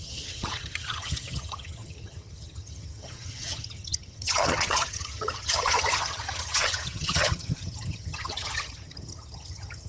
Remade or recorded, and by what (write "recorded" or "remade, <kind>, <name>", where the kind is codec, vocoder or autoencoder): remade, vocoder, HiFi-GAN